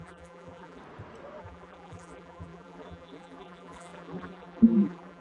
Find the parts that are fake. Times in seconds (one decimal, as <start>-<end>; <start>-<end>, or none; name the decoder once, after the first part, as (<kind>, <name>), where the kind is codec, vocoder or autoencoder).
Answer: 0.0-0.8 (vocoder, BigVGAN v2); 1.4-5.2